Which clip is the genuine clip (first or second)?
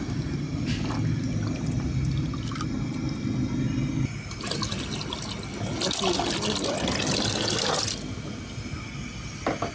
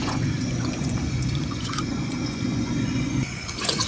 first